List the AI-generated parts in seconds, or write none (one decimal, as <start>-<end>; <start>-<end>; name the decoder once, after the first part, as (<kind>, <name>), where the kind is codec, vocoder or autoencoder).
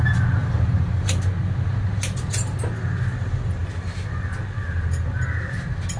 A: 0.4-1.1 (vocoder, BigVGAN v2)